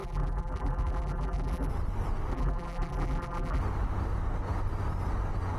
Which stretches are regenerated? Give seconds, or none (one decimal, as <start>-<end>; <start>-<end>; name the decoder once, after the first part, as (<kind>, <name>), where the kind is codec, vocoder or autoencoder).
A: 0.0-1.7 (vocoder, BigVGAN v2); 2.3-3.6